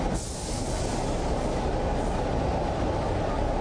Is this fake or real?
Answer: real